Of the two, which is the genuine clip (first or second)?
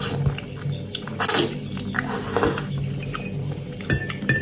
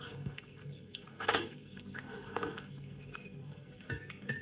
first